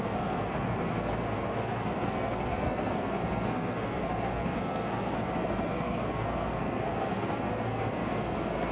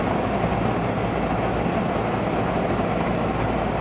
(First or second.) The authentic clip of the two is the second